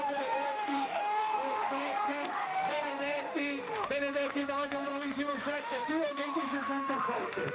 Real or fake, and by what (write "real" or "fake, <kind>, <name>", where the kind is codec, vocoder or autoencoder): fake, autoencoder, DAC-VAE